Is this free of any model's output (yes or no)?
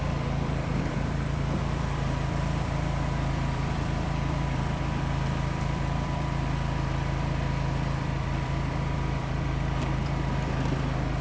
no